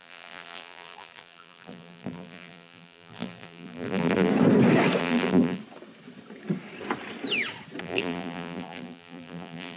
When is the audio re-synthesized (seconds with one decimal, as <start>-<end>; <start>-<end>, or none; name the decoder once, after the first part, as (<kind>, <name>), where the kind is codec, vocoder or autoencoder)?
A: 0.0-4.3 (vocoder, BigVGAN v2); 5.0-5.6; 7.8-9.8